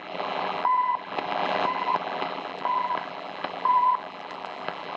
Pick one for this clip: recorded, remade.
remade